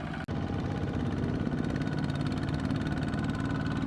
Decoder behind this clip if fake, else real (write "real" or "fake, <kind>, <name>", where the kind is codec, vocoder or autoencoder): real